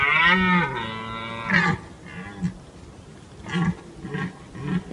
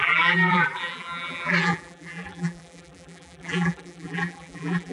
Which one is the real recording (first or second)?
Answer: first